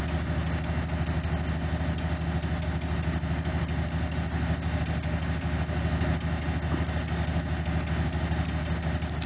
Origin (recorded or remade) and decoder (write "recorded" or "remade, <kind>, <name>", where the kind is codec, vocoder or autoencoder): recorded